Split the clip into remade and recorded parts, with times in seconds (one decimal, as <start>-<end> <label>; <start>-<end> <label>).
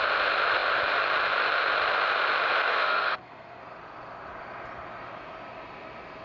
0.0-2.7 recorded; 2.7-3.6 remade; 3.6-6.2 recorded